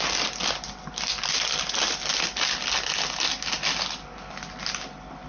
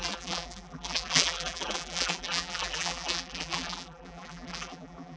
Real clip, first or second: first